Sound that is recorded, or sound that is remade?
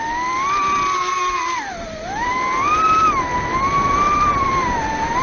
recorded